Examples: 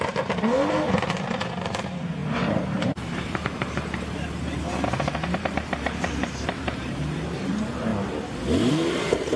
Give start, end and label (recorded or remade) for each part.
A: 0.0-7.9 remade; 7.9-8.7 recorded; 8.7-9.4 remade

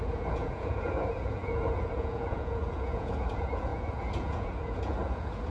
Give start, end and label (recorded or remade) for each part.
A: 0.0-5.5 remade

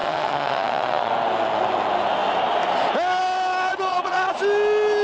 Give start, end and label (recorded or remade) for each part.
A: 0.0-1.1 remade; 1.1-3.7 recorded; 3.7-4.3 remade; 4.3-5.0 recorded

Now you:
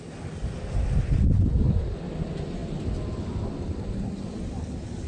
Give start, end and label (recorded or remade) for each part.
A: 0.0-5.1 recorded

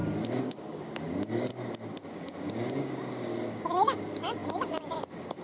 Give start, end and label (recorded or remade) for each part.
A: 0.0-0.6 recorded; 0.6-1.5 remade; 1.5-2.1 recorded; 2.1-5.4 remade